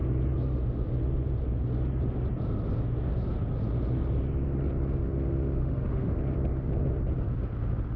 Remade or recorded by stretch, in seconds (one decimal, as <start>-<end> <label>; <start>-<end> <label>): 0.0-5.6 recorded; 5.6-6.1 remade; 6.1-8.0 recorded